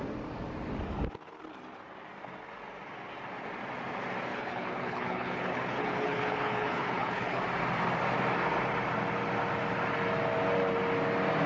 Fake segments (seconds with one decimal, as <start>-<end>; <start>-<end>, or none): 4.3-7.4